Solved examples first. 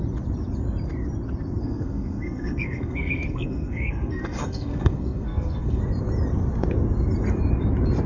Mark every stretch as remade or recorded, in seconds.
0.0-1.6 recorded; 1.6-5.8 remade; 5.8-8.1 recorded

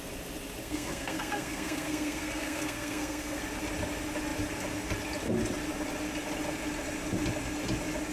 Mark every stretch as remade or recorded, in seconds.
0.0-0.6 recorded; 0.6-3.4 remade; 3.4-8.1 recorded

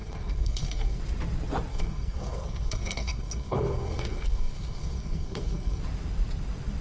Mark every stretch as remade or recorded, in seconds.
0.0-1.0 remade; 1.0-1.7 recorded; 1.7-5.8 remade; 5.8-6.8 recorded

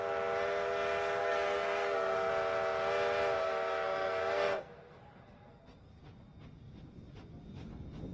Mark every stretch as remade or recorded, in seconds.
0.0-1.2 recorded; 1.2-2.3 remade; 2.3-3.4 recorded; 3.4-5.9 remade; 5.9-8.1 recorded